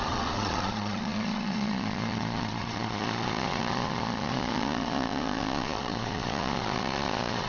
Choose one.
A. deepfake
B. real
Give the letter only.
A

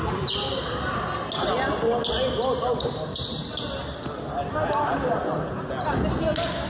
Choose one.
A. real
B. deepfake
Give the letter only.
A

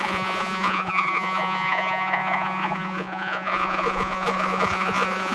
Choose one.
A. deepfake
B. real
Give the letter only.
A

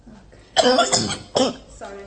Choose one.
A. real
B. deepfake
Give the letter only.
A